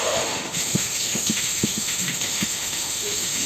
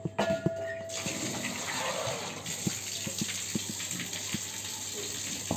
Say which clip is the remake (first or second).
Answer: first